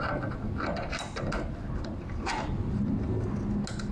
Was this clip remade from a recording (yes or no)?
no